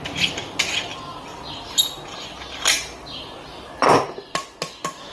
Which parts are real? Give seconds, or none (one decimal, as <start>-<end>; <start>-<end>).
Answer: 0.0-5.1